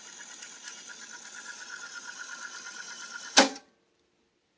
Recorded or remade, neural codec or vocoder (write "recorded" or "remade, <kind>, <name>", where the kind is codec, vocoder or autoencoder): recorded